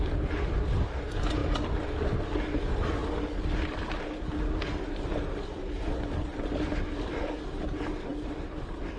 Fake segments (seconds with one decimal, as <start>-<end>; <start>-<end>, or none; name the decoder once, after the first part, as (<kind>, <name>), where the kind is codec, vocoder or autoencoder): none